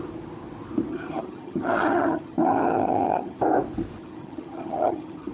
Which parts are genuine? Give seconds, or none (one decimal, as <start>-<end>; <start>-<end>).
0.0-0.9; 3.4-4.0